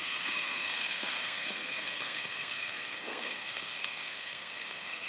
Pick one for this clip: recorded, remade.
remade